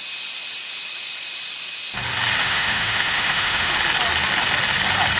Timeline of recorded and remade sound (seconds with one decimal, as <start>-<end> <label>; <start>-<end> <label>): 0.0-2.4 recorded; 2.4-3.7 remade; 3.7-5.2 recorded